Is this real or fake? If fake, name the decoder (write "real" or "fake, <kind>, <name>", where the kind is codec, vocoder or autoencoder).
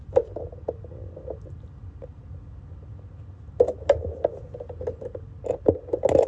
real